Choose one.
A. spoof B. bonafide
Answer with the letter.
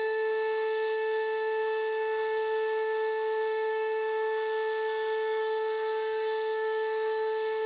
A